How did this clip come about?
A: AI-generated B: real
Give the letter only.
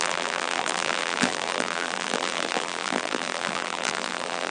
A